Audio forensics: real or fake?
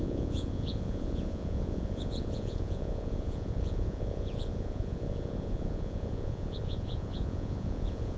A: fake